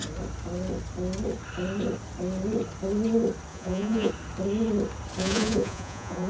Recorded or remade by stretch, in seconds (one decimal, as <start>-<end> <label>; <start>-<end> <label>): 0.0-3.5 recorded; 3.5-4.1 remade; 4.1-5.2 recorded; 5.2-6.3 remade